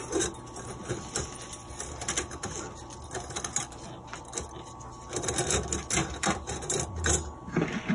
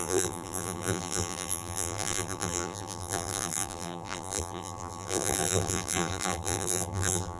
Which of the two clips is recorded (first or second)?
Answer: first